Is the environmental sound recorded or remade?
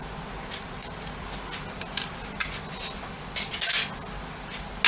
recorded